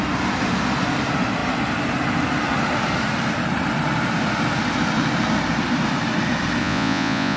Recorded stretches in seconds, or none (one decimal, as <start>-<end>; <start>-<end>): 0.0-6.6